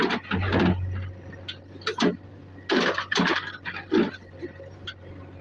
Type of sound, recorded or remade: recorded